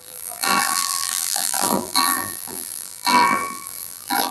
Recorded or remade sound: remade